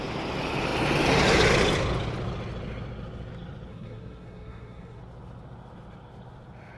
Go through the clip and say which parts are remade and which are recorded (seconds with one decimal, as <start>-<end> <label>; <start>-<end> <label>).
0.0-3.7 recorded; 3.7-5.0 remade; 5.0-6.8 recorded